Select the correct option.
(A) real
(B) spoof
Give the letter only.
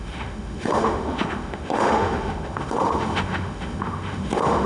B